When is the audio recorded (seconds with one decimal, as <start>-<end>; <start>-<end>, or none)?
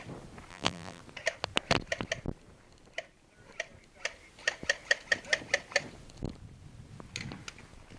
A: 0.0-0.5; 1.0-8.0